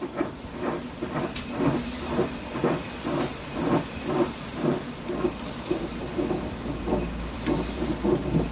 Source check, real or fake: fake